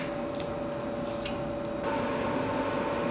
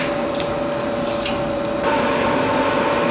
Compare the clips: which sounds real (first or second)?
first